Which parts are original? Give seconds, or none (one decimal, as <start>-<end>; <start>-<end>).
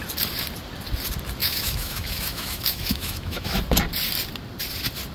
0.0-1.4; 3.6-5.1